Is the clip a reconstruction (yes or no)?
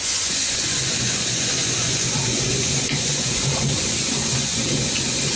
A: yes